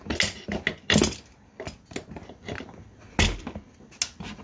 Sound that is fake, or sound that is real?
real